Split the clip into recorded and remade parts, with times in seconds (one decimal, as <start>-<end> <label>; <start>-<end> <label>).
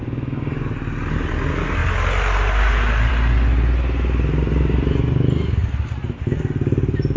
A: 0.0-7.2 recorded